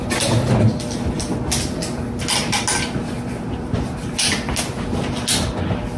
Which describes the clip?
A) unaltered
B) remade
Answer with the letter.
A